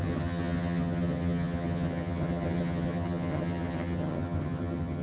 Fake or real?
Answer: fake